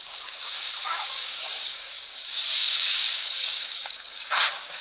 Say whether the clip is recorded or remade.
remade